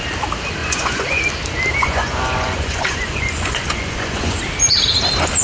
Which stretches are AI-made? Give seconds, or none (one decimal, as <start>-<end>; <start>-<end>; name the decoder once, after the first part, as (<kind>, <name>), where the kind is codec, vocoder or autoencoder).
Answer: 0.6-1.2 (vocoder, Vocos); 1.8-4.4